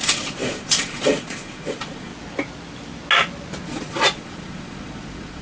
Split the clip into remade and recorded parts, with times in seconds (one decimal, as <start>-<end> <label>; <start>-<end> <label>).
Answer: 0.0-2.1 remade; 2.1-3.6 recorded; 3.6-5.4 remade